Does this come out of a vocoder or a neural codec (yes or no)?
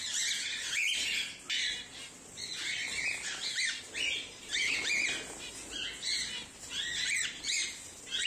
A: no